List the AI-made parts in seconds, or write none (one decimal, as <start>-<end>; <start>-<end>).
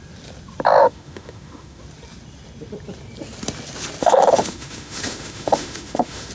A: 0.8-1.8; 4.0-6.3